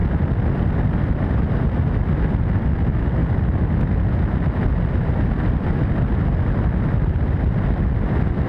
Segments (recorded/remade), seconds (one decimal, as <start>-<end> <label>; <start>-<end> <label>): 0.0-8.5 recorded